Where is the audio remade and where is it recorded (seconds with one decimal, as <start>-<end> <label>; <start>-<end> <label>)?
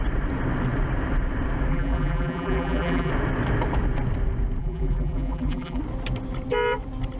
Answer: 0.0-1.7 recorded; 1.7-3.1 remade; 3.1-4.6 recorded; 4.6-5.8 remade; 5.8-7.2 recorded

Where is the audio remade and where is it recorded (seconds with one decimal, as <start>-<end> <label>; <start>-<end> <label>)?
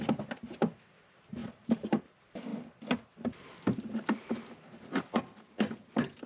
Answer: 0.0-1.4 recorded; 1.4-2.0 remade; 2.0-6.3 recorded